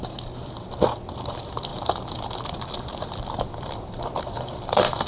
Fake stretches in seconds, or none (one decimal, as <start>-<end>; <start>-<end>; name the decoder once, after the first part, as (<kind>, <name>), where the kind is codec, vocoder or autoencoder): 1.7-5.1 (vocoder, BigVGAN v2)